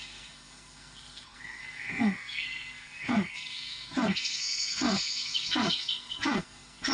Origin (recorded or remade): remade